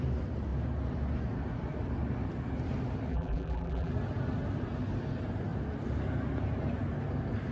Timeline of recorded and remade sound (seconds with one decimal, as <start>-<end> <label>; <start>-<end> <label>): 0.0-3.1 recorded; 3.1-3.9 remade; 3.9-7.5 recorded